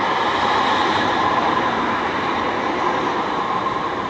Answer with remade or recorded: recorded